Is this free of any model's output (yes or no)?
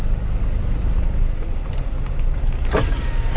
yes